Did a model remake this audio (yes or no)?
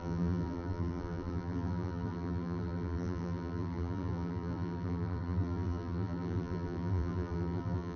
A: yes